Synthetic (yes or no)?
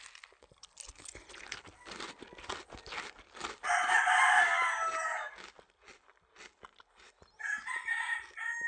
no